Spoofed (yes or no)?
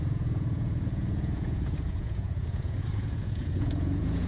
yes